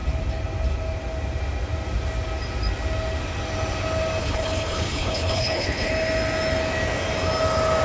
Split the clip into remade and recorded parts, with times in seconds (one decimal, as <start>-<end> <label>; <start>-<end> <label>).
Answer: 0.0-4.2 recorded; 4.2-5.9 remade; 5.9-7.8 recorded